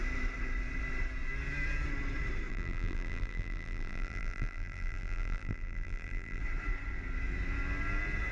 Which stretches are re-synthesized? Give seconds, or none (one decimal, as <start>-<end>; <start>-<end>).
2.5-6.4